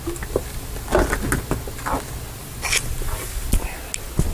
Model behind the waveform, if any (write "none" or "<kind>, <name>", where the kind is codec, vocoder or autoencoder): none